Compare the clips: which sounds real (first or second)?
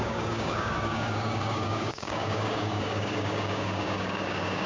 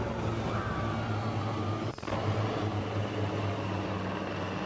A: second